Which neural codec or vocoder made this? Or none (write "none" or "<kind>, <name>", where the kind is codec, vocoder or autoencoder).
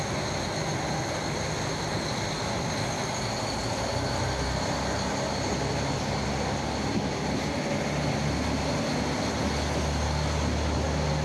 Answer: none